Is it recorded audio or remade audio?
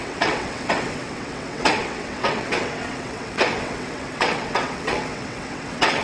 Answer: remade